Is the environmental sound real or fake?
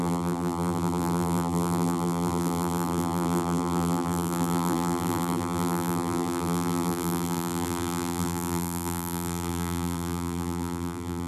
fake